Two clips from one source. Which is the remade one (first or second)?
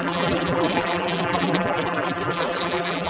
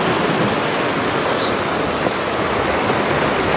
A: first